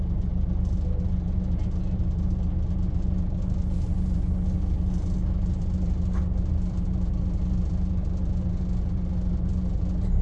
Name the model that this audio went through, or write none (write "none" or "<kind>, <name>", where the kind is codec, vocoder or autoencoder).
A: none